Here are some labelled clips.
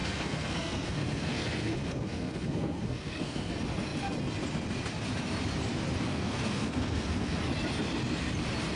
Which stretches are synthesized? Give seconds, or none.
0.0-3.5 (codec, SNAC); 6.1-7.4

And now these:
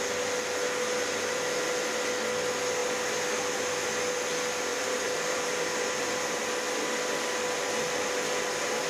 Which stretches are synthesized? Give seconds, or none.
4.7-6.4 (vocoder, BigVGAN v2)

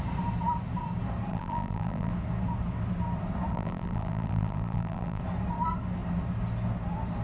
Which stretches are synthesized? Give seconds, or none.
1.3-2.1 (vocoder, BigVGAN v2); 3.5-5.2

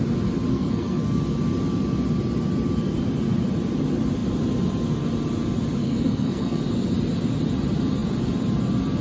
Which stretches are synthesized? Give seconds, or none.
0.5-1.2 (codec, SNAC); 5.8-6.6